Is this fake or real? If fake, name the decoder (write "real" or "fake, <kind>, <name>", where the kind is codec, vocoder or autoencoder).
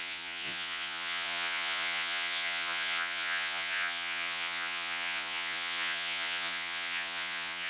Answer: fake, vocoder, Vocos